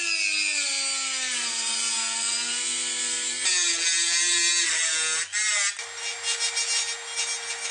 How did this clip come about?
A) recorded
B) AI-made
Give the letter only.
A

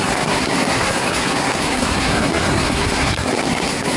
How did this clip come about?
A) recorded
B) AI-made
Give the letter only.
B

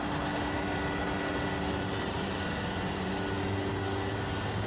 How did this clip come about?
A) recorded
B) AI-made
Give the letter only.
A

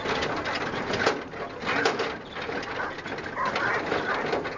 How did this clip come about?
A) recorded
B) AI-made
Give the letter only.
A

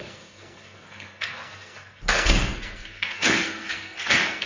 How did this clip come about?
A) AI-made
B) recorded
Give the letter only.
A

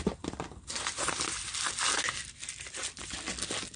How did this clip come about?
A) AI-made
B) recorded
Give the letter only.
B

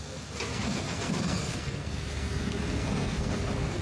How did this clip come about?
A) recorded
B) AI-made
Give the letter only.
B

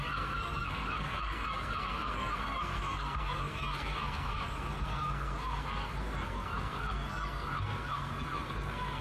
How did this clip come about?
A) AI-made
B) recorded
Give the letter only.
A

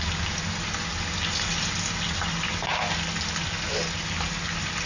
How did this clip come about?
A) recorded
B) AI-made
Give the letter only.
A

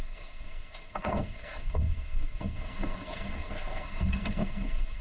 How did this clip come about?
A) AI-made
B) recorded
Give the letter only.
A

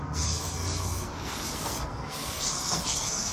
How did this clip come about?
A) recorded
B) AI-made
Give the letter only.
B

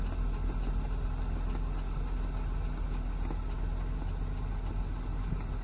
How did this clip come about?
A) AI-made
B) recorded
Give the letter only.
B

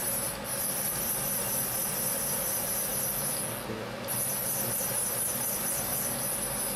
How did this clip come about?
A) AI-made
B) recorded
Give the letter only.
B